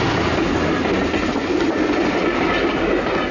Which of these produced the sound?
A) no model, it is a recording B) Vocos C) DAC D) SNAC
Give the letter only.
A